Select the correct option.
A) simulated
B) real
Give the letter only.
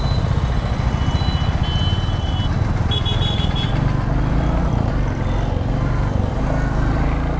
B